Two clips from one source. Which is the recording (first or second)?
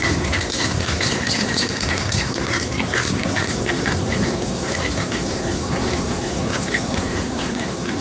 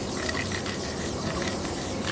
second